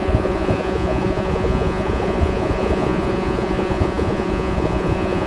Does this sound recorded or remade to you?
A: remade